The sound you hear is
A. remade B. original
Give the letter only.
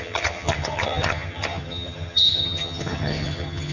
A